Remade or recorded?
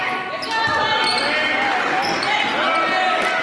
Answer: recorded